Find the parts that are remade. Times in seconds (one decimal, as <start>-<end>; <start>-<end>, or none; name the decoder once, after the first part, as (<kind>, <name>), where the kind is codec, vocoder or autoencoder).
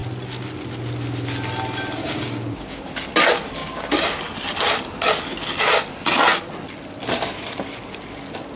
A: 2.0-2.8 (codec, DAC); 3.6-4.2